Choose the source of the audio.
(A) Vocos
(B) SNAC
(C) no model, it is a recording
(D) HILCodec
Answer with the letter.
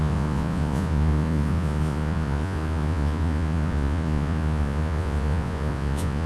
A